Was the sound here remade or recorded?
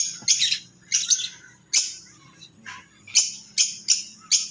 recorded